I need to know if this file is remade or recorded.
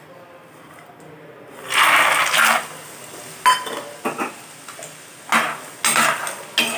recorded